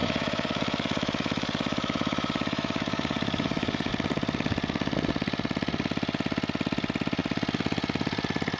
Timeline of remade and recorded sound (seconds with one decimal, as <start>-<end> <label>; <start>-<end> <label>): 0.0-3.9 remade; 3.9-8.6 recorded